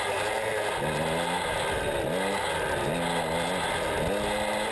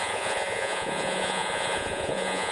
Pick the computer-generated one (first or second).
second